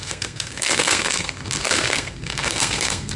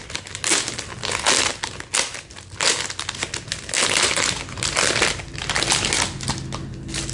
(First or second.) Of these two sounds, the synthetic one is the first